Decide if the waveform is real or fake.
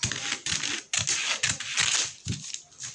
real